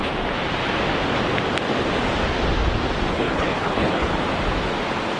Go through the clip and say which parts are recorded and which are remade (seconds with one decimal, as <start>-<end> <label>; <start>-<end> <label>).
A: 0.0-3.1 recorded; 3.1-4.1 remade; 4.1-5.2 recorded